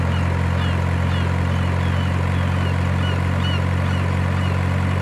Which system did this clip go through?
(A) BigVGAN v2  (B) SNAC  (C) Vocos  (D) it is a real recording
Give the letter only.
D